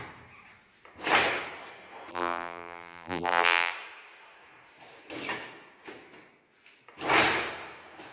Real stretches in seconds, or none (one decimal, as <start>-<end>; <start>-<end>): 0.0-2.1; 3.7-8.1